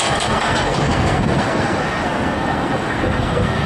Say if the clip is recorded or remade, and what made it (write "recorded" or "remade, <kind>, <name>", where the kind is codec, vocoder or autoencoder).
remade, codec, SNAC